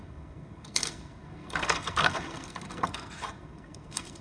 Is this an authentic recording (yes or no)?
no